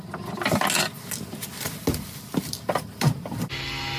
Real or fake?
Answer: real